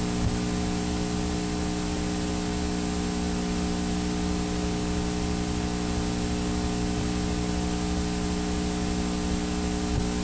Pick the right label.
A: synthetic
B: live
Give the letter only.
B